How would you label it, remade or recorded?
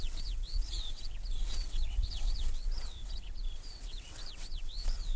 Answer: remade